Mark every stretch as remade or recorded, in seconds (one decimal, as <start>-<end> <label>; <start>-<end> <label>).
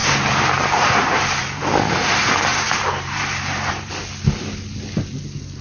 0.0-1.6 remade; 1.6-2.5 recorded; 2.5-3.9 remade; 3.9-5.6 recorded